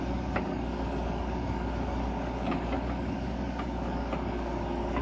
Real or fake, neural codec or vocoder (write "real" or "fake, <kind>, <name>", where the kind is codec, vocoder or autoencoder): fake, codec, DAC